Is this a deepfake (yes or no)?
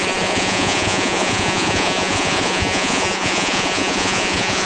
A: yes